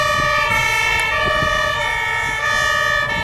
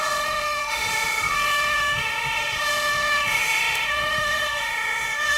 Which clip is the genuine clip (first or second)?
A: first